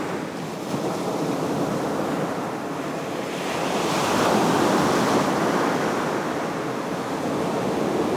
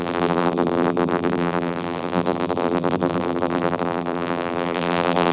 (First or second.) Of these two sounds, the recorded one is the first